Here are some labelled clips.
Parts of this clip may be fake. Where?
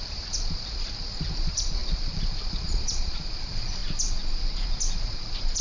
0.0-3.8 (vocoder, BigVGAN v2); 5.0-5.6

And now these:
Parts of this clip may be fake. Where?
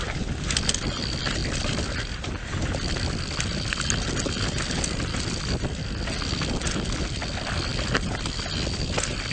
1.4-2.0 (vocoder, BigVGAN v2); 7.7-8.4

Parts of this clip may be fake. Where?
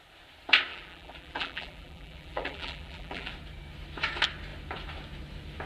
0.7-3.3 (vocoder, BigVGAN v2)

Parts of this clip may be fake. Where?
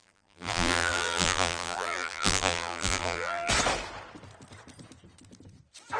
0.0-3.5 (vocoder, BigVGAN v2)